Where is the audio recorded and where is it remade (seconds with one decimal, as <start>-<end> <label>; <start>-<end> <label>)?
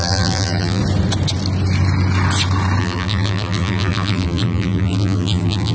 0.0-0.8 remade; 0.8-2.8 recorded; 2.8-5.7 remade